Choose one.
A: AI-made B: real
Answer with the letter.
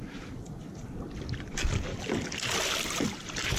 B